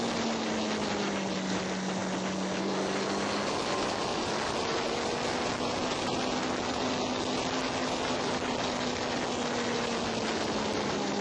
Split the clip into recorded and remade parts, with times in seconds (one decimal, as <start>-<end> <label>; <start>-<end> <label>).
0.0-11.2 recorded